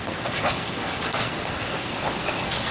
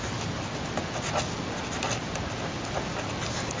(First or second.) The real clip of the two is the second